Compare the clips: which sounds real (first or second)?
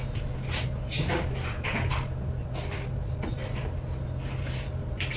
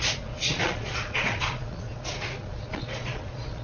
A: first